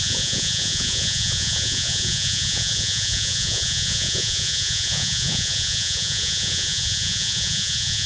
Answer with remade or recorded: remade